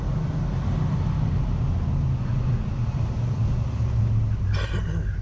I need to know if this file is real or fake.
real